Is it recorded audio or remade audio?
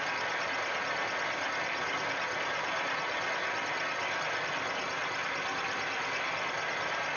recorded